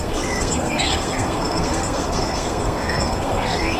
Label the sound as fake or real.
fake